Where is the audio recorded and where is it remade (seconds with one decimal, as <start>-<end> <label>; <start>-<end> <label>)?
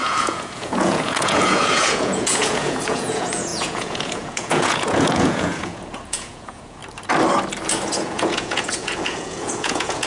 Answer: 0.0-6.8 remade; 6.8-7.9 recorded; 7.9-10.1 remade